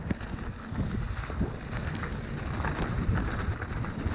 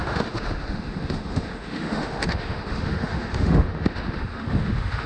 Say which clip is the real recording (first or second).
first